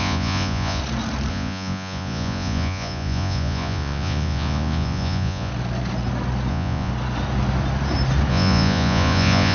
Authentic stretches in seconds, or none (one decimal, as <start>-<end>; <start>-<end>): 0.8-1.3; 5.5-6.5; 6.9-8.3